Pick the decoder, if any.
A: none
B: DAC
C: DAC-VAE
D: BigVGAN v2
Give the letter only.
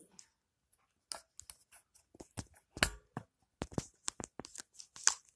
A